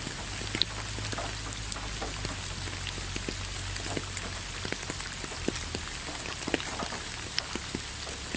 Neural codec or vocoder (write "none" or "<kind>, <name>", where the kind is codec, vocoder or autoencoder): none